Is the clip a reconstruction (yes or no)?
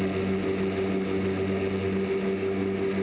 no